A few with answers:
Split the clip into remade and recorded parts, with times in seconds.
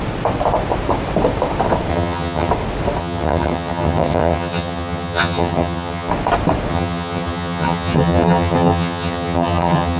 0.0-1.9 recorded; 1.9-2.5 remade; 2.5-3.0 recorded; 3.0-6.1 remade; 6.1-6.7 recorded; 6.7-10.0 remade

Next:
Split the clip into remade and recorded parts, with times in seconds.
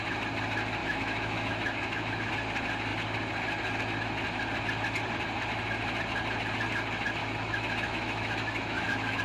0.0-0.8 recorded; 0.8-2.3 remade; 2.3-7.2 recorded; 7.2-9.2 remade